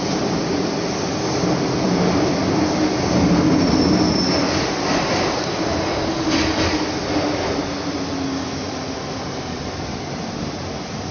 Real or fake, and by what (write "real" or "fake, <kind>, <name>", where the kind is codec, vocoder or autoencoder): real